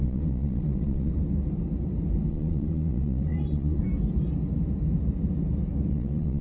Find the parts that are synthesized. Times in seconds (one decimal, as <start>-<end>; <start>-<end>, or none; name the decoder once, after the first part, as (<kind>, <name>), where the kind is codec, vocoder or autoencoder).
0.0-1.1 (vocoder, Vocos); 2.3-3.8; 5.9-6.4